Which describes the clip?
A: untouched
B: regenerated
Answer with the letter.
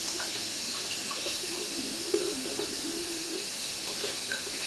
B